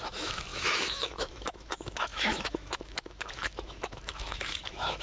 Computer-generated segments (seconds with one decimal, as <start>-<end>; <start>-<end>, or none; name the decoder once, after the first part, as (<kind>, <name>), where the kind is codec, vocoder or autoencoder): 0.0-5.0 (autoencoder, DAC-VAE)